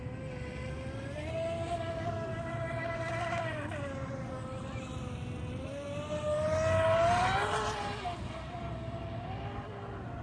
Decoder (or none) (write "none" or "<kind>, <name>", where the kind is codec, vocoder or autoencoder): none